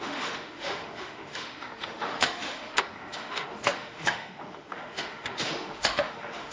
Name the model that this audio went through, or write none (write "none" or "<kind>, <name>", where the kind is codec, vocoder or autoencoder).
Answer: autoencoder, DAC-VAE